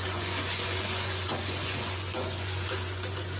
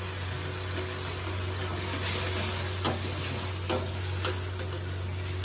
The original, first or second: second